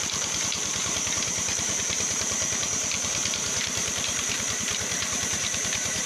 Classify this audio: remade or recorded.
remade